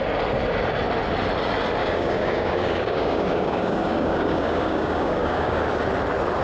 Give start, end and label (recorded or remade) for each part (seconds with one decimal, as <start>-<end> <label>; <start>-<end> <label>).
0.0-1.8 recorded; 1.8-5.6 remade; 5.6-6.4 recorded